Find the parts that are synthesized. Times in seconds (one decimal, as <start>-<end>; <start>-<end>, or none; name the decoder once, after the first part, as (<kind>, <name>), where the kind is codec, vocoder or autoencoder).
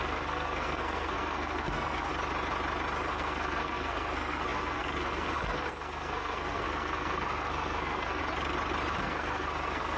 0.0-2.1 (codec, SNAC); 3.1-8.2; 9.0-10.0